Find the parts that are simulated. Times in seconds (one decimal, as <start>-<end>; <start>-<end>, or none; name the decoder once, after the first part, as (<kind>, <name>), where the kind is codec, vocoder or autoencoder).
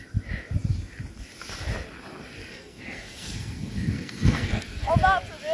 2.4-4.9 (codec, SNAC)